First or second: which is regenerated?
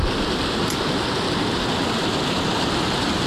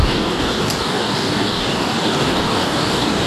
second